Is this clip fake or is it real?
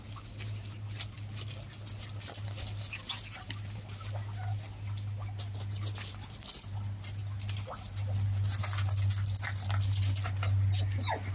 real